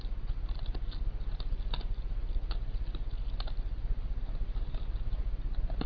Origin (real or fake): real